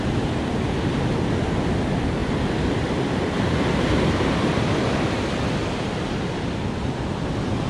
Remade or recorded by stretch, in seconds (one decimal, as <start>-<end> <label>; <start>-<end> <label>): 0.0-2.2 recorded; 2.2-4.1 remade; 4.1-7.7 recorded